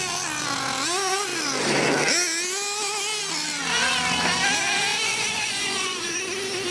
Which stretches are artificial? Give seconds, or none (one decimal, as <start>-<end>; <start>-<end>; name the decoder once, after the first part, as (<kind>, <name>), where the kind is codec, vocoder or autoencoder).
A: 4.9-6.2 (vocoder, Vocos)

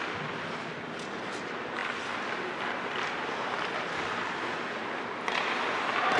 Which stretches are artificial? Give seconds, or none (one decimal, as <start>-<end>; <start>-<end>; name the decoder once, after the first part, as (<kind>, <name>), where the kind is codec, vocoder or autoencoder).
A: none

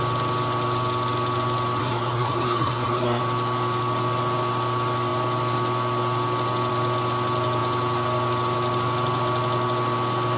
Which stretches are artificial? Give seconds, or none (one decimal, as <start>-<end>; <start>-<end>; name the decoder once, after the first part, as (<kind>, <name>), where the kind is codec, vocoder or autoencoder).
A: 1.8-3.2 (codec, SNAC)